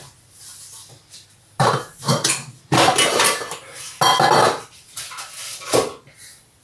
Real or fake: real